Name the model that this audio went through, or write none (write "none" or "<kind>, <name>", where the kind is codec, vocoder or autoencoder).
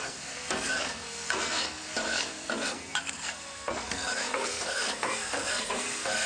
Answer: codec, SNAC